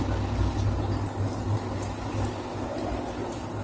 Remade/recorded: recorded